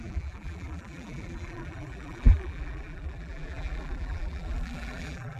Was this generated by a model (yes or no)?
yes